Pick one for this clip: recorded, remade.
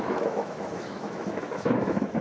remade